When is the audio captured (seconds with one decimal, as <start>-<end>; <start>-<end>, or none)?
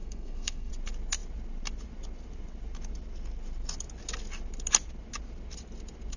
0.7-6.2